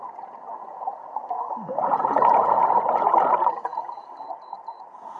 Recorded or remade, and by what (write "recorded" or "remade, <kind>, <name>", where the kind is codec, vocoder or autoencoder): remade, vocoder, Vocos